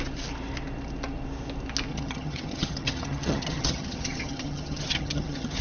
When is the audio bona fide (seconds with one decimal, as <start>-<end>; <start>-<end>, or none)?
0.0-1.9